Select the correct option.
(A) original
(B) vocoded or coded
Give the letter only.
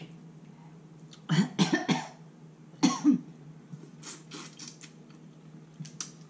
A